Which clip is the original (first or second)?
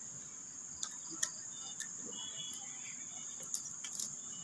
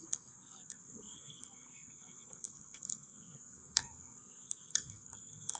first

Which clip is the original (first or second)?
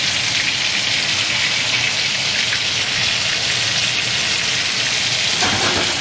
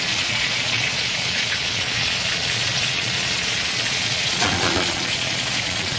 first